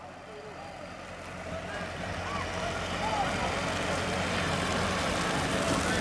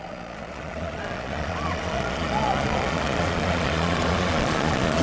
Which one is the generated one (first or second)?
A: second